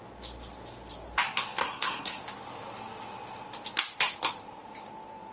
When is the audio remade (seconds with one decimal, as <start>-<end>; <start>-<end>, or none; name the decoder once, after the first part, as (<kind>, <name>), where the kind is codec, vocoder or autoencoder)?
1.6-2.2 (codec, SNAC)